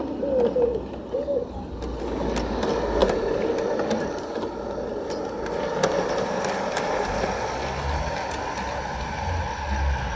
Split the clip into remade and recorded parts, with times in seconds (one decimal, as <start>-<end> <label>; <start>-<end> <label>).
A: 0.0-10.2 recorded